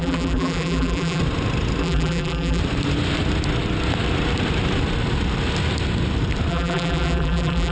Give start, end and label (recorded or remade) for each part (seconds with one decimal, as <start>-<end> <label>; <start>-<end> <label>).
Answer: 0.0-1.2 remade; 1.2-1.8 recorded; 1.8-2.6 remade; 2.6-6.5 recorded; 6.5-7.7 remade